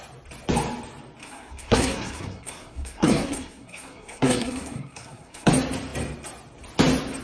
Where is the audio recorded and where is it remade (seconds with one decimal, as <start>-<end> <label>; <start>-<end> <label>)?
0.0-1.2 recorded; 1.2-5.5 remade; 5.5-7.2 recorded